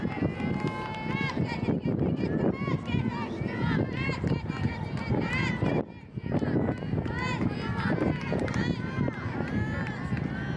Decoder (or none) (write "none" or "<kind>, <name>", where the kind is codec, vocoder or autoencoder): none